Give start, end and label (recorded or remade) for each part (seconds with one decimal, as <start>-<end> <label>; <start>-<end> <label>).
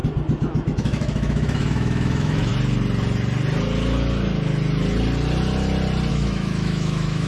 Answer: 0.0-0.8 recorded; 0.8-2.5 remade; 2.5-6.1 recorded; 6.1-7.3 remade